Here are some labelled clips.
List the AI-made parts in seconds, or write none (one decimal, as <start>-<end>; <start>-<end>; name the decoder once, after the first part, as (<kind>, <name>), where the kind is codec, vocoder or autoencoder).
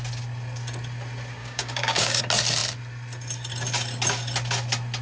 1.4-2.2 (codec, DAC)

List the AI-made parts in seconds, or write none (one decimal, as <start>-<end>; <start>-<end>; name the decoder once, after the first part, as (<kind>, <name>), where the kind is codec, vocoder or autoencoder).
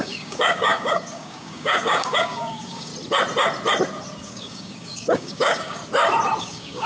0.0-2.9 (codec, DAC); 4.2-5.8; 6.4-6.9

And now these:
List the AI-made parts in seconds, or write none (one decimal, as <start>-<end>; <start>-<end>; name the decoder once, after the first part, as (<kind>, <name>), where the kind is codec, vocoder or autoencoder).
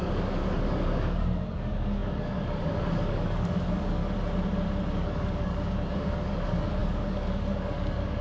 0.0-4.0 (codec, DAC); 4.9-8.2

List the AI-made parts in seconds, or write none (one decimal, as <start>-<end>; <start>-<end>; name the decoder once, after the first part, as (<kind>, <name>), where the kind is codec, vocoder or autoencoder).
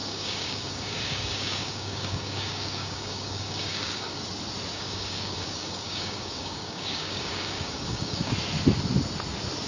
0.0-4.2 (codec, DAC); 4.7-8.3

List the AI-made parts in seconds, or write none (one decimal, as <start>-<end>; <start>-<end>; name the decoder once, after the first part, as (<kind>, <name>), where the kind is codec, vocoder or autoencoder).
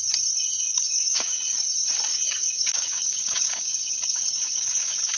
0.7-1.5 (codec, DAC); 2.1-5.2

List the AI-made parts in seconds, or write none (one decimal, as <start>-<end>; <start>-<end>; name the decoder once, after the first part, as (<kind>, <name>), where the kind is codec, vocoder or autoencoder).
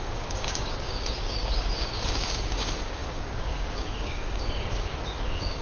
0.0-5.6 (codec, DAC)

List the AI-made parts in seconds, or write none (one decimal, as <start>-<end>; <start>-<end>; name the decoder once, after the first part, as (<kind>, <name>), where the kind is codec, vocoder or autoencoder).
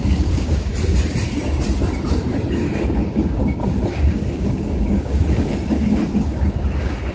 0.0-0.7 (codec, DAC); 2.8-3.4; 3.9-7.1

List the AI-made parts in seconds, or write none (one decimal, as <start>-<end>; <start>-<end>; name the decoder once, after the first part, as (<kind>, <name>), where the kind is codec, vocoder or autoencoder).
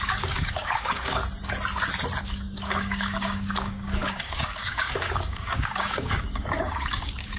0.0-1.2 (codec, DAC); 2.2-7.4